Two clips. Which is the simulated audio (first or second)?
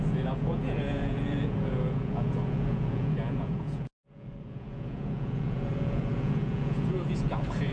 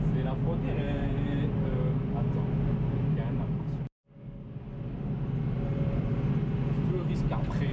first